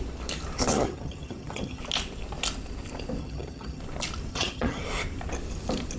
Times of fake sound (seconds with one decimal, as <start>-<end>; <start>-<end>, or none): 0.7-1.8; 3.2-3.8; 4.3-4.8